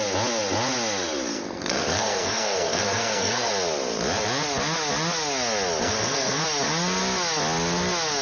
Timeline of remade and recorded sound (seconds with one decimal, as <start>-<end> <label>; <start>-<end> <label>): 0.0-1.3 recorded; 1.3-3.5 remade; 3.5-5.8 recorded; 5.8-6.4 remade; 6.4-8.2 recorded